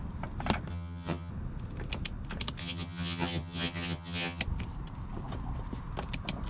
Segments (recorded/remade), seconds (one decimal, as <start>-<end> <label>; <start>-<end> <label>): 0.0-0.7 recorded; 0.7-1.3 remade; 1.3-2.6 recorded; 2.6-4.4 remade; 4.4-6.5 recorded